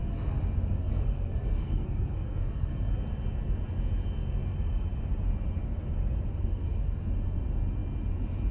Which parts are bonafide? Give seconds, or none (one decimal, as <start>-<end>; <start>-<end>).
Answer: 0.0-0.8; 2.9-6.3; 7.1-8.5